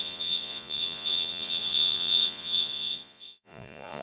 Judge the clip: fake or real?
fake